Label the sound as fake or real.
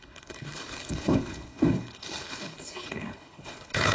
fake